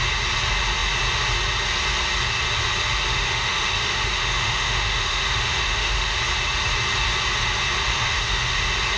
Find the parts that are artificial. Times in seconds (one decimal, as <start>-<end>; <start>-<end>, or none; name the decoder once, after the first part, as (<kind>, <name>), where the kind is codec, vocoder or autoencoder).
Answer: 3.1-6.2 (autoencoder, DAC-VAE); 7.9-8.6